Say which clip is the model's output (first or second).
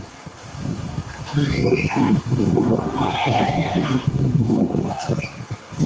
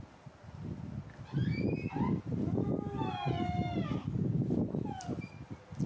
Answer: first